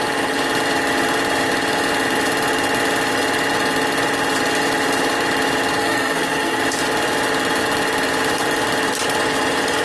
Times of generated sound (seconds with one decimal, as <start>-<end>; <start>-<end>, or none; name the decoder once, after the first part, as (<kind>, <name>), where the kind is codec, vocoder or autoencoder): 5.8-6.6 (codec, SNAC)